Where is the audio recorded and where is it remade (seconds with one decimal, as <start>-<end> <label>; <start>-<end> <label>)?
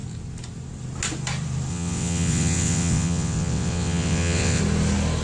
0.0-1.7 recorded; 1.7-4.6 remade; 4.6-5.2 recorded